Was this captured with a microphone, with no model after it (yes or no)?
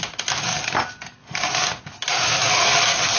yes